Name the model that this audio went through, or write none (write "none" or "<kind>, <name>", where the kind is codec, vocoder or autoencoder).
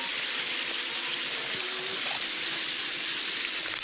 none